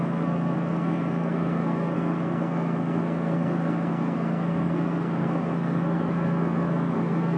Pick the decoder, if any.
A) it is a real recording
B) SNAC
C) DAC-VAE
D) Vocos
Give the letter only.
B